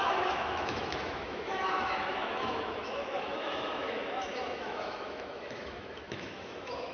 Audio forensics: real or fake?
fake